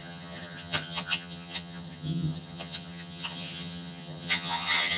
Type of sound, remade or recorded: remade